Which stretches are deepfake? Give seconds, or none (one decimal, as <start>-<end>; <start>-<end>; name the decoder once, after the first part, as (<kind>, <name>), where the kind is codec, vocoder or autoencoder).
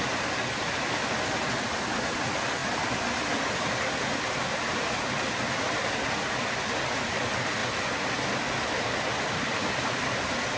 none